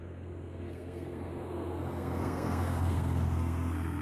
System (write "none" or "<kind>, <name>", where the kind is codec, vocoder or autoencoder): codec, SNAC